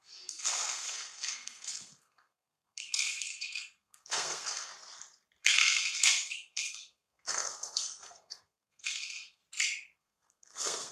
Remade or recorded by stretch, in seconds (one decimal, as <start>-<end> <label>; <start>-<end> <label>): 0.0-4.7 remade; 4.7-5.4 recorded; 5.4-9.4 remade; 9.4-10.0 recorded; 10.0-10.9 remade